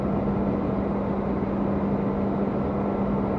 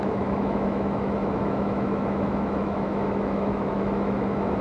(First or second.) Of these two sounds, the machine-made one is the second